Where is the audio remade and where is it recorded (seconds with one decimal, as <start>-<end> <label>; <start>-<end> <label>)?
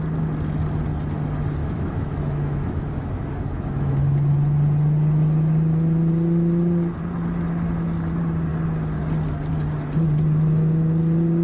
0.0-1.6 recorded; 1.6-4.0 remade; 4.0-11.4 recorded